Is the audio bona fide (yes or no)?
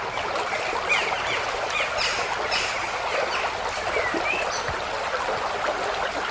yes